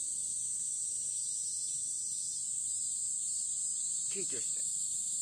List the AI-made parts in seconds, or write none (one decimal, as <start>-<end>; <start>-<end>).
none

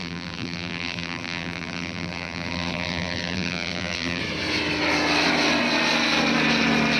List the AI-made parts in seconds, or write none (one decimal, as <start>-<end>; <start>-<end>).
0.0-4.2

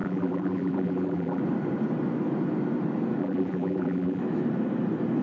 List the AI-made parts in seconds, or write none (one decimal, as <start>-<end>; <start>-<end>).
0.0-1.4; 3.2-4.2

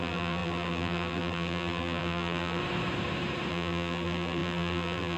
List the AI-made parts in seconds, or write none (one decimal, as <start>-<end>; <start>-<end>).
0.0-2.6; 3.5-5.2

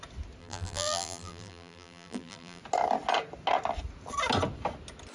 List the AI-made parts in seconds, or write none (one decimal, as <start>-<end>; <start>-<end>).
0.4-2.6

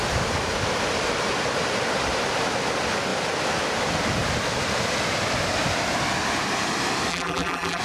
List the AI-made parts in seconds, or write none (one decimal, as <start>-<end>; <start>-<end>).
7.1-7.8

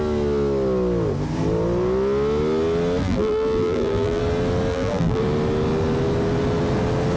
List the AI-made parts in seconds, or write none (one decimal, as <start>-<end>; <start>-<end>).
3.0-4.2; 4.7-5.2

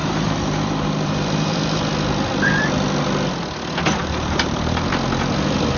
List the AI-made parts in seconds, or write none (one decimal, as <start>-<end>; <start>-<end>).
0.0-1.9; 4.0-4.9